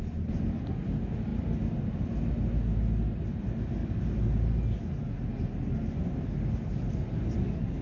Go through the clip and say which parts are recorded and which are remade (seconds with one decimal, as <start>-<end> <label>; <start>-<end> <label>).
0.0-7.8 recorded